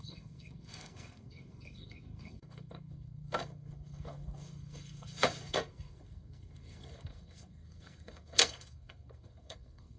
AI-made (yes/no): yes